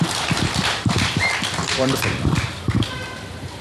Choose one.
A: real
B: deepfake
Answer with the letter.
B